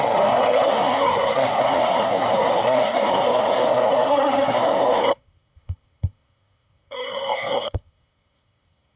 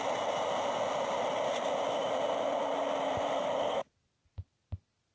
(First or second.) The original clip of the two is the second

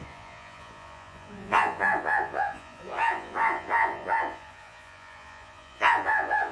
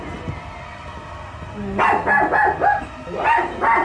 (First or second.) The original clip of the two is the second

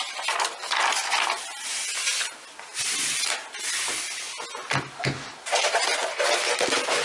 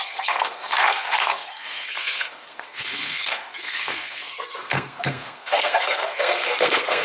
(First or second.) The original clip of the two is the first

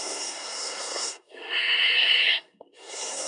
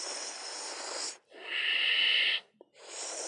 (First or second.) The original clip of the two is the second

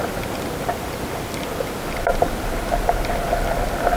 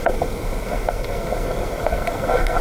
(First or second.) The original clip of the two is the first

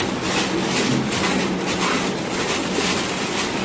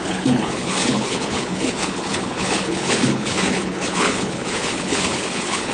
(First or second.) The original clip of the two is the first